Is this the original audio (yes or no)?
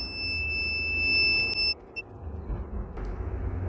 yes